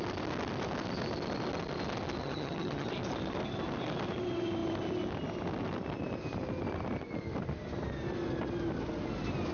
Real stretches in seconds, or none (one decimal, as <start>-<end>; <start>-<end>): 0.0-2.2; 2.9-9.5